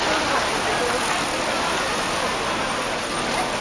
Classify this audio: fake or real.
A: real